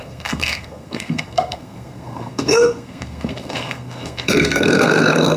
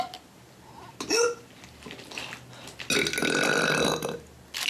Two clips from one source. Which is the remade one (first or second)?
first